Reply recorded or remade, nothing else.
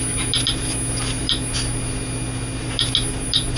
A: recorded